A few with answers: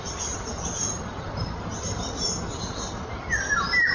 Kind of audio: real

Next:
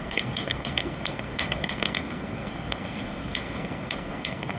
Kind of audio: fake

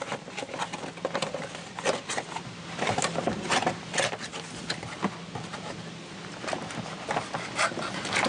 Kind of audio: real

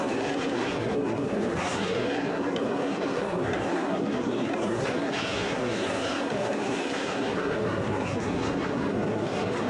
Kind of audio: fake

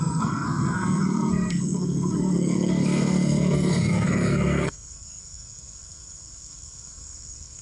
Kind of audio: fake